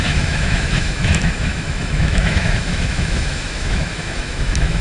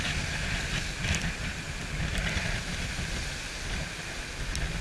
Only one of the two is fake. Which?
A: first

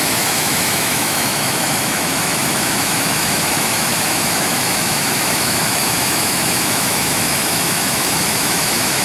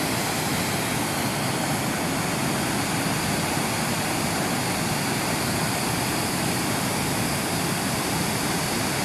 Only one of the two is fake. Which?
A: first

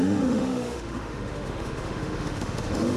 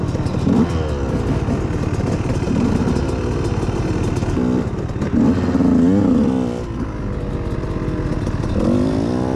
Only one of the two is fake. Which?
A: first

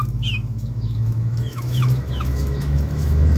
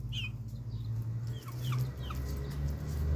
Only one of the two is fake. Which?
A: first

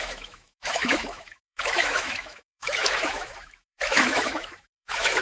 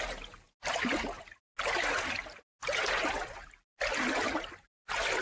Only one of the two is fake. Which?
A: first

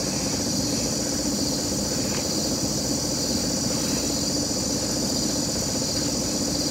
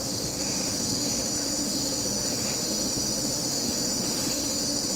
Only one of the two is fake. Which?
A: second